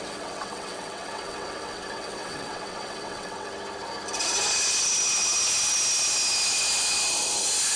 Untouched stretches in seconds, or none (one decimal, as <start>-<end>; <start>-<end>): 3.5-7.8